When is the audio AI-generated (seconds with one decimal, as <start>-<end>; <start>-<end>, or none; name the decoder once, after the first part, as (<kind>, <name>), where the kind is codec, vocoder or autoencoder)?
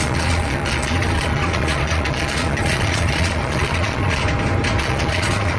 0.0-4.2 (vocoder, Vocos); 4.8-5.6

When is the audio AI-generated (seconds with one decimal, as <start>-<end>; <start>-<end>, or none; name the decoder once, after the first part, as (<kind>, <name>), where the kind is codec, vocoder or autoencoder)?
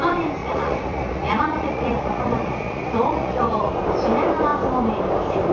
0.4-3.7 (vocoder, Vocos)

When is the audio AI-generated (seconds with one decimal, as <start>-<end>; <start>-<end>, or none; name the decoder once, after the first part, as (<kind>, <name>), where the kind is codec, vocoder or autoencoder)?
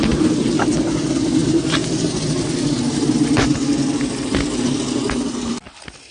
none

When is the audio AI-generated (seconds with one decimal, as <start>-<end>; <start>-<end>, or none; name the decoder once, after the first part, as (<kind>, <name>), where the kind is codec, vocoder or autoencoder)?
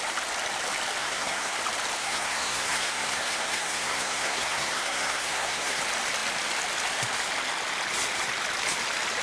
1.0-1.6 (codec, SNAC); 2.0-5.8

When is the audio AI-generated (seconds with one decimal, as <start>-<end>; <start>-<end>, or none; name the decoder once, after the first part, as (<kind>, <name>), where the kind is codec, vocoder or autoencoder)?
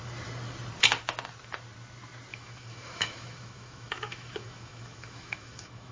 2.3-5.9 (autoencoder, DAC-VAE)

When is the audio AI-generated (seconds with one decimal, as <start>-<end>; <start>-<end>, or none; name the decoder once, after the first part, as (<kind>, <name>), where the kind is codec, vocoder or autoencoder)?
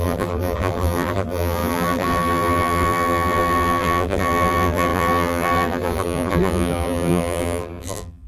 0.0-8.3 (vocoder, BigVGAN v2)